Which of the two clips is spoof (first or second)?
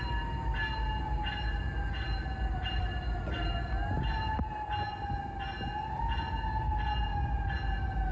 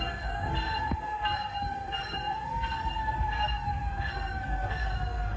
second